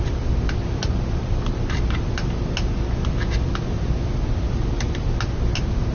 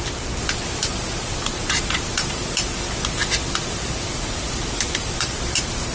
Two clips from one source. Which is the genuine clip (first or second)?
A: first